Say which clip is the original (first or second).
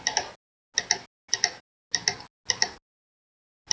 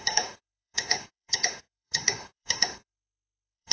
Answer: first